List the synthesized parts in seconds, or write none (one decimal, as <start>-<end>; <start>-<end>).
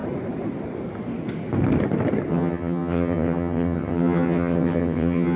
2.3-5.4